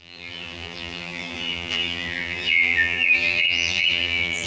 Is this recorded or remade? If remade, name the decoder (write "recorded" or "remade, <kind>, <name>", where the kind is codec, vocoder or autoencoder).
remade, vocoder, BigVGAN v2